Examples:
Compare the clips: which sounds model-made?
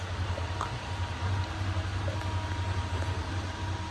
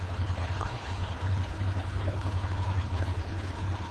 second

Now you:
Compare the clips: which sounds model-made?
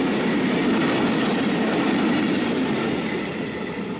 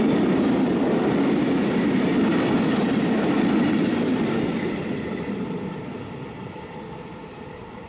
second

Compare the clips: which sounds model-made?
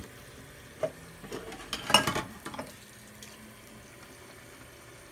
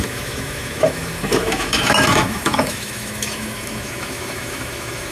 second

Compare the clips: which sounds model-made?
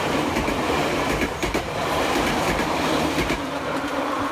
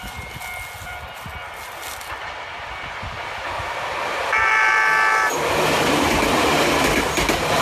first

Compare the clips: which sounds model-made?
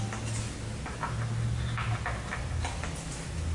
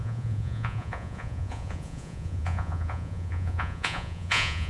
second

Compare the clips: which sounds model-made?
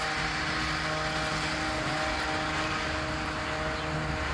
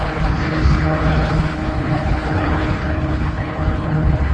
second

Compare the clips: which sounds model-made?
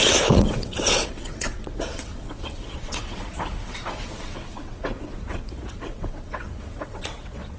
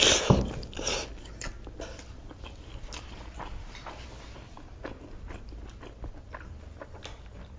first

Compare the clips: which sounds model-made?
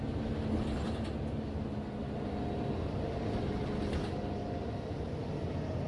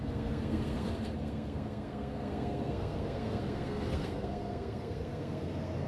second